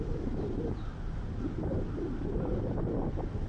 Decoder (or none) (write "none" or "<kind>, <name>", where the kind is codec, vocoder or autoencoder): none